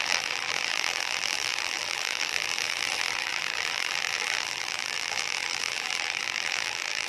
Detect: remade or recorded remade